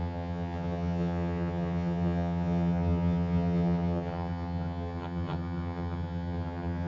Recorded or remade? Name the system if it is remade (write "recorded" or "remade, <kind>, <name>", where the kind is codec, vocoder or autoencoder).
remade, vocoder, HiFi-GAN